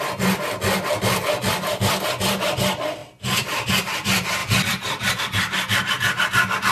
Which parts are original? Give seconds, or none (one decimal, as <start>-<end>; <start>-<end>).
0.0-6.7